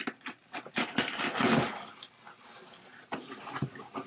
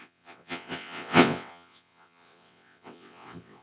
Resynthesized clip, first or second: second